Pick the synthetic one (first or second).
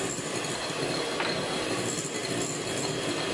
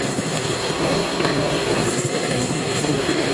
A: second